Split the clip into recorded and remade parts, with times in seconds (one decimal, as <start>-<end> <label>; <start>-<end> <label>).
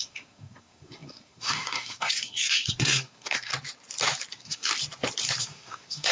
0.0-3.5 remade; 3.5-4.3 recorded; 4.3-4.7 remade; 4.7-5.4 recorded; 5.4-6.1 remade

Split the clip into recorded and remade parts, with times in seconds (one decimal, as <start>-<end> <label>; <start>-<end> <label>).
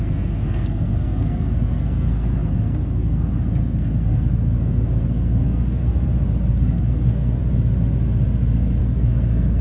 0.0-5.9 remade; 5.9-6.5 recorded; 6.5-7.4 remade; 7.4-8.8 recorded; 8.8-9.6 remade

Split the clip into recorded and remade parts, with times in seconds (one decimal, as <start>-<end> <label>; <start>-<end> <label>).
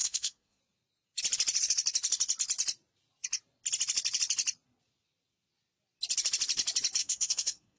0.0-0.6 remade; 0.6-7.0 recorded; 7.0-7.8 remade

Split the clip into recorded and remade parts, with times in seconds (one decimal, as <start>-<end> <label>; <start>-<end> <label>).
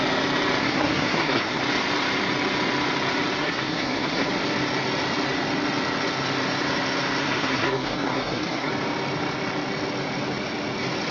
0.0-0.6 recorded; 0.6-1.6 remade; 1.6-3.4 recorded; 3.4-4.3 remade; 4.3-7.2 recorded; 7.2-8.7 remade; 8.7-11.1 recorded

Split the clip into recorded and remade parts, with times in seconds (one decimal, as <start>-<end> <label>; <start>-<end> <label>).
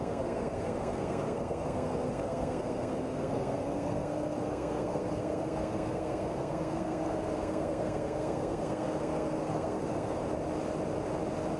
0.0-10.2 remade; 10.2-11.6 recorded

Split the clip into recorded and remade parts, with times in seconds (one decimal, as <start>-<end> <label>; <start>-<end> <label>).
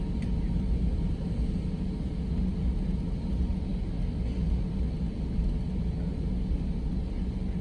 0.0-7.6 recorded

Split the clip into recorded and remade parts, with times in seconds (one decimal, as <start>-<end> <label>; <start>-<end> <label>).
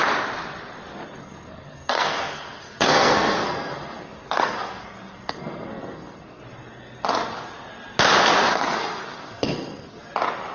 0.0-1.2 recorded; 1.2-6.4 remade; 6.4-8.5 recorded; 8.5-10.0 remade; 10.0-10.5 recorded